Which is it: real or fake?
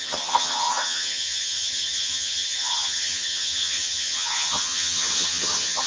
fake